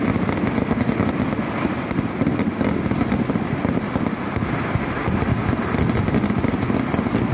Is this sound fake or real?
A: real